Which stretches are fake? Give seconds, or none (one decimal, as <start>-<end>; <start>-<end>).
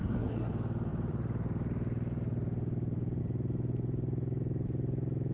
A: 0.0-0.5